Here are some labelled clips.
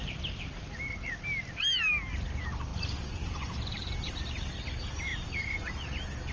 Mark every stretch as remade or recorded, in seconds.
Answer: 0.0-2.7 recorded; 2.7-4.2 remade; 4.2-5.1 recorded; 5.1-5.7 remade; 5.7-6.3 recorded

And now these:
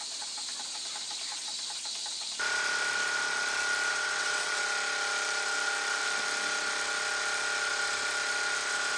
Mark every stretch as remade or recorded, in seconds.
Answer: 0.0-3.9 recorded; 3.9-4.6 remade; 4.6-9.0 recorded

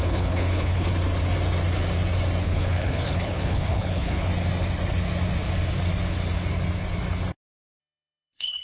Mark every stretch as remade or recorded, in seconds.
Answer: 0.0-0.9 remade; 0.9-2.4 recorded; 2.4-4.3 remade; 4.3-7.8 recorded; 7.8-8.6 remade

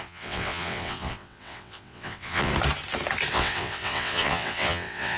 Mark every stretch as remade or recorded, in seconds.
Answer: 0.0-2.5 remade; 2.5-3.3 recorded; 3.3-5.2 remade

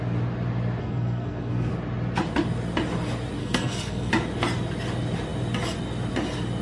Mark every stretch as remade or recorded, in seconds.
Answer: 0.0-0.8 recorded; 0.8-1.7 remade; 1.7-3.4 recorded; 3.4-4.1 remade; 4.1-6.6 recorded